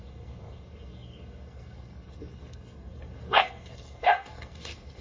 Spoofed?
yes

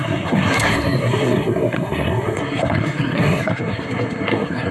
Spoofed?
yes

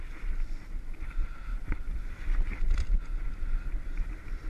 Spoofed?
no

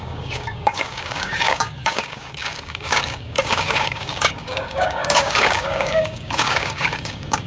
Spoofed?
yes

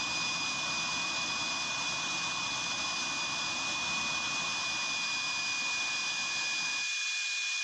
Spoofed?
no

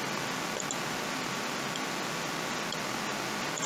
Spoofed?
no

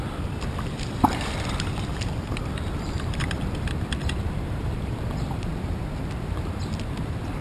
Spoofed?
yes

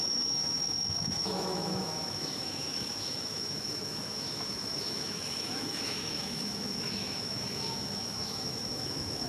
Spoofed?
yes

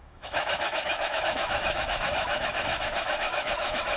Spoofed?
yes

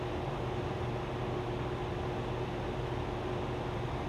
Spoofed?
no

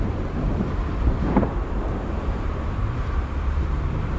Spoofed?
yes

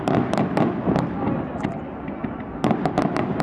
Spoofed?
no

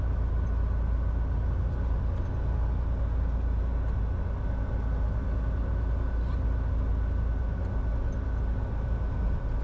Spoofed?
no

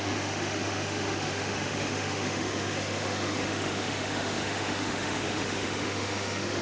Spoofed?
yes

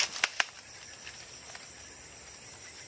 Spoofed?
no